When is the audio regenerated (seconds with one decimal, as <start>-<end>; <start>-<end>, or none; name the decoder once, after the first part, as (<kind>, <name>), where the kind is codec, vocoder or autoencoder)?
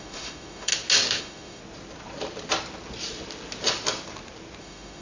0.0-0.7 (autoencoder, DAC-VAE); 1.2-1.6; 4.6-5.0